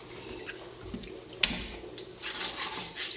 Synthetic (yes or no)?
no